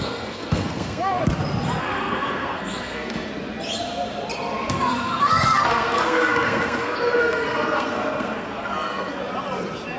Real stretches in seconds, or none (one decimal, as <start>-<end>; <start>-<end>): 1.2-1.8; 3.3-4.7; 9.2-10.0